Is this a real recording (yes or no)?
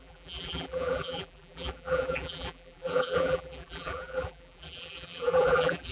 no